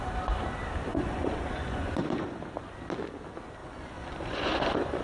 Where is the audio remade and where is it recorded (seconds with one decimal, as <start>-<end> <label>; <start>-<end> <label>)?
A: 0.0-0.9 recorded; 0.9-2.4 remade; 2.4-3.6 recorded; 3.6-5.0 remade